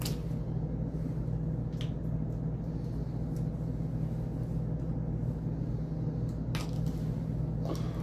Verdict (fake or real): real